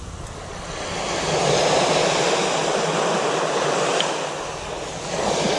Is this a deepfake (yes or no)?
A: no